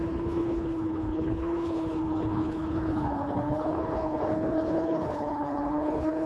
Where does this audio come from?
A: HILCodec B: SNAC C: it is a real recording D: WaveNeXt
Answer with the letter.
A